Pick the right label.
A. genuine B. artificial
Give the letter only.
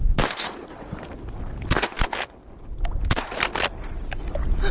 A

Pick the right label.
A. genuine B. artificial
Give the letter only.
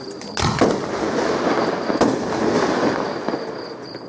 A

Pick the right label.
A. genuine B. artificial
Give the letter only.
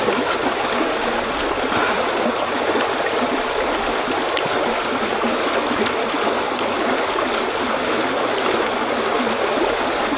A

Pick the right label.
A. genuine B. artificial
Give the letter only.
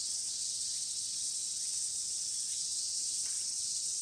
B